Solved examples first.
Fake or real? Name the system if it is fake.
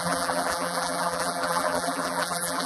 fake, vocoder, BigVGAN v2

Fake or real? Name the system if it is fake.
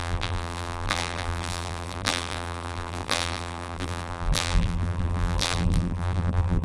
fake, vocoder, BigVGAN v2